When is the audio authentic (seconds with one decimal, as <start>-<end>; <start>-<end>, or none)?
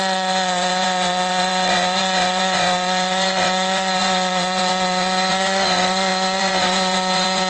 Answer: none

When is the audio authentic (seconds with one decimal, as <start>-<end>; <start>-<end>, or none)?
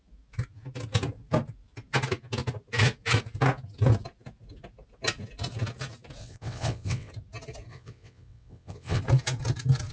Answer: 0.0-6.2; 7.1-7.7; 9.0-9.9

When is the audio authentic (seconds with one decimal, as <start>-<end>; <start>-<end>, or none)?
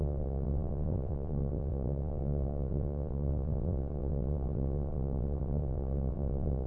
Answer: none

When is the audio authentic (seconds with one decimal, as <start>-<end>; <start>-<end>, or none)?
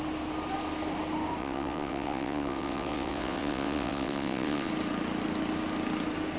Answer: 0.0-1.4; 4.7-6.4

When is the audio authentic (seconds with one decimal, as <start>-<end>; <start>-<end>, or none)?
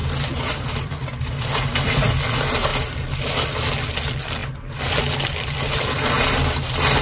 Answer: 0.0-7.0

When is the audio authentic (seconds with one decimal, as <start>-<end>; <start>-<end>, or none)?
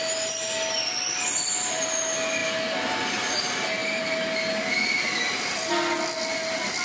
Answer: 0.0-6.8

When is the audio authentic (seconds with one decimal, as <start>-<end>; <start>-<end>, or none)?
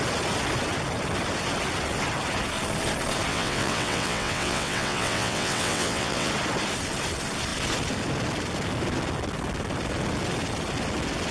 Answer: 0.0-3.3; 6.3-11.3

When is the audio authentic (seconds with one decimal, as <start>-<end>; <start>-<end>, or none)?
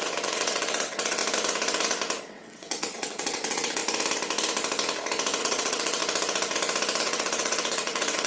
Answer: 1.2-2.2; 3.8-5.4; 6.0-7.0